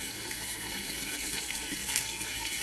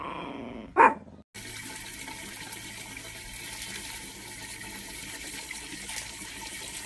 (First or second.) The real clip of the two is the second